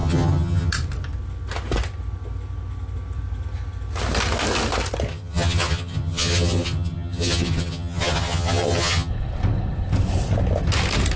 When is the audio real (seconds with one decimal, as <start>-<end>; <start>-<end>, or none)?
0.7-5.1; 9.1-11.2